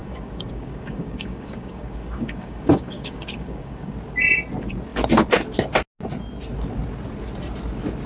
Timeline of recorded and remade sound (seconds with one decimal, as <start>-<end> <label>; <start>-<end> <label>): 0.0-3.9 remade; 3.9-8.1 recorded